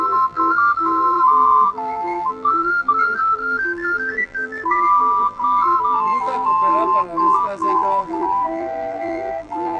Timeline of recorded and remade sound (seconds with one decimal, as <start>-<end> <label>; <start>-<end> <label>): 0.0-9.8 remade